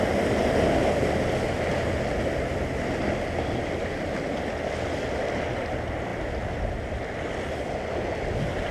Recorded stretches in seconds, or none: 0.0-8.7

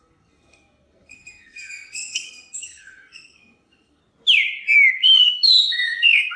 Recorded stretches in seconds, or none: 4.0-4.9

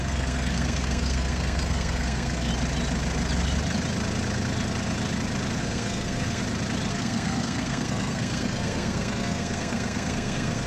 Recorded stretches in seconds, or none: 2.5-5.6; 6.4-6.9